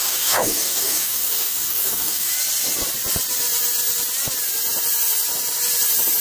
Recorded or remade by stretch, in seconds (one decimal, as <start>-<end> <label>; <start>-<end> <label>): 0.0-2.3 remade; 2.3-6.2 recorded